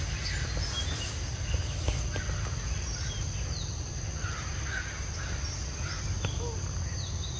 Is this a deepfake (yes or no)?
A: no